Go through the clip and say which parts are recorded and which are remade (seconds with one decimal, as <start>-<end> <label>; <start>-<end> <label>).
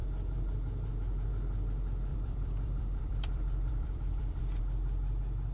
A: 0.0-2.1 recorded; 2.1-4.6 remade; 4.6-5.5 recorded